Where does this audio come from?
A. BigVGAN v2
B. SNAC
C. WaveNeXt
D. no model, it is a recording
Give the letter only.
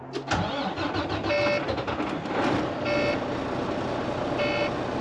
D